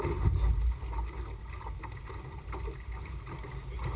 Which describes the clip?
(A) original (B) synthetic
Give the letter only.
A